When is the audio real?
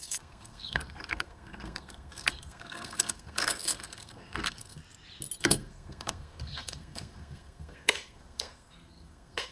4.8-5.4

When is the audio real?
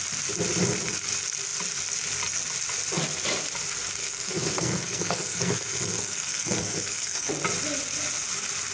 0.0-4.0; 7.3-8.7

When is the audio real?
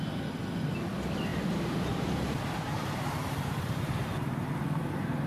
0.0-1.3; 4.5-5.3